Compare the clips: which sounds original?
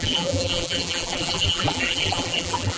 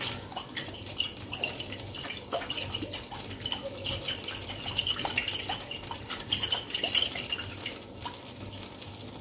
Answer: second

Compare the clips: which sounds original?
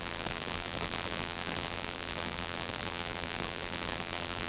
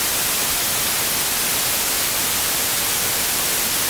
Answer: second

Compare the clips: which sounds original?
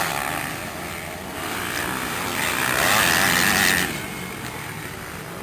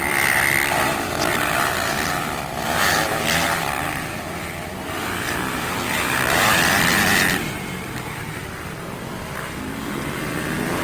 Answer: first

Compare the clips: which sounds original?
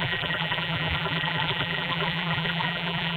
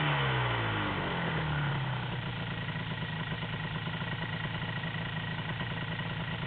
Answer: second